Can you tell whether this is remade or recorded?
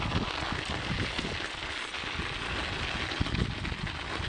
recorded